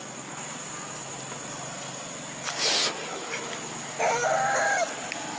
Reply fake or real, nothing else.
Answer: real